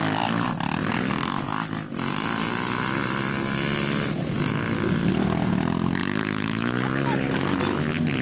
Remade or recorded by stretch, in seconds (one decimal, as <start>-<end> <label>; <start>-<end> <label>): 0.0-6.0 recorded; 6.0-7.6 remade; 7.6-8.2 recorded